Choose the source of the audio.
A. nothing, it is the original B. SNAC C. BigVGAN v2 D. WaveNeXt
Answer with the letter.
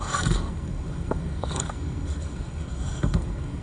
B